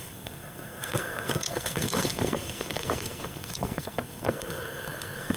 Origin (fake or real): fake